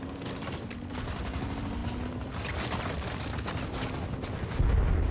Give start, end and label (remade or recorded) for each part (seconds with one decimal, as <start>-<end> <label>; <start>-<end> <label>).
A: 0.0-5.1 recorded